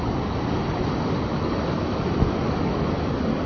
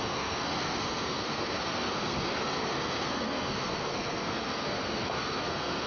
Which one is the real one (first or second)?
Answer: first